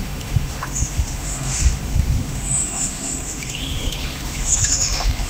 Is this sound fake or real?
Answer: fake